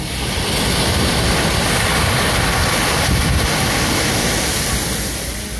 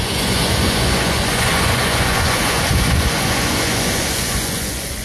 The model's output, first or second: second